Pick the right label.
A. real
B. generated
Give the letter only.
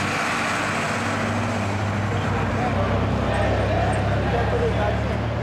A